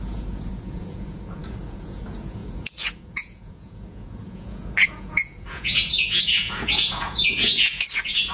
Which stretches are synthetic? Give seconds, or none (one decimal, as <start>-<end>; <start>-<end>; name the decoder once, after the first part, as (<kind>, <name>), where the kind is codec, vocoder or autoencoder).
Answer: 0.0-8.3 (vocoder, Vocos)